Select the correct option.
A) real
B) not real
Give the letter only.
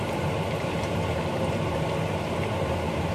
B